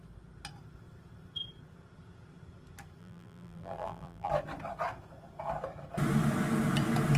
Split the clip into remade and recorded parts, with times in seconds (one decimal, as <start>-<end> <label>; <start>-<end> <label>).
0.0-3.0 recorded; 3.0-4.3 remade; 4.3-7.2 recorded